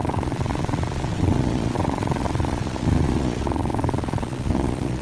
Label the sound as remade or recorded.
remade